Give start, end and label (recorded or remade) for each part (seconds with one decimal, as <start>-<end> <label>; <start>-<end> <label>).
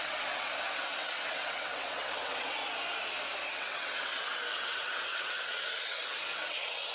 0.0-2.6 remade; 2.6-3.5 recorded; 3.5-6.9 remade